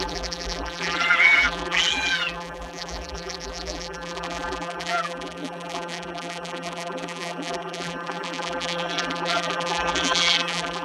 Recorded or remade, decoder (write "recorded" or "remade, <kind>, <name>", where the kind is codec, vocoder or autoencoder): remade, vocoder, BigVGAN v2